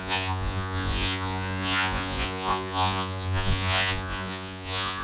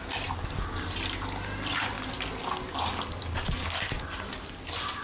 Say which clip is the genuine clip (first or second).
second